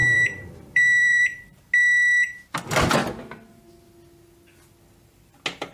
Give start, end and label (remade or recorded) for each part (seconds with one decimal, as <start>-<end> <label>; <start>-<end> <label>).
0.0-1.6 remade; 1.6-5.7 recorded